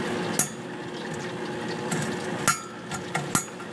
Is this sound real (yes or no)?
yes